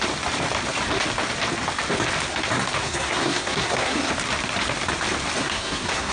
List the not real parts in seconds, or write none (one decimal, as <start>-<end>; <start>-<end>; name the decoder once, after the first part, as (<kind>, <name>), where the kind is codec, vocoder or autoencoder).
2.8-4.1 (codec, SNAC); 5.4-6.1